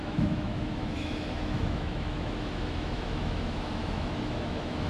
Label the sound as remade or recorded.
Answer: remade